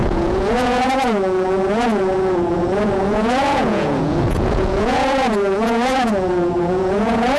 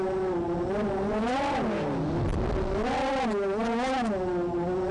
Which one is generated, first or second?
first